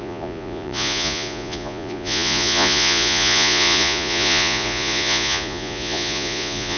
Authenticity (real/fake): fake